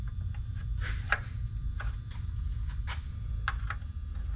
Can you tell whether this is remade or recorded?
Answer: recorded